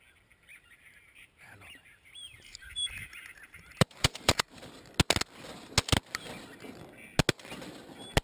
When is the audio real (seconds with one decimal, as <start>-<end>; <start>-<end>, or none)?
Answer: 0.0-0.5; 4.7-8.2